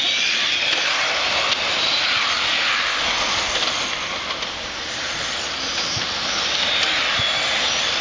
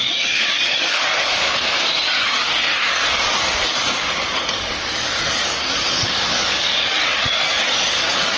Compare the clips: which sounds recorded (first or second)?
first